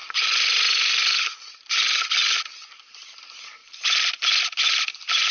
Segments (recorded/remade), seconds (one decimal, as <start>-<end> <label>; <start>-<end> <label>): 0.0-5.3 recorded